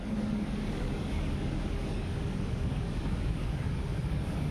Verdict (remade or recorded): remade